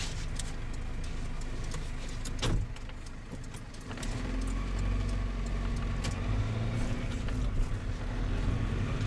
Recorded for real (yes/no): yes